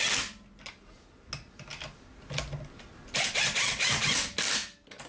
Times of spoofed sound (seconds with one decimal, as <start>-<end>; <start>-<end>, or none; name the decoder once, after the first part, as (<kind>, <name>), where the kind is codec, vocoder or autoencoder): none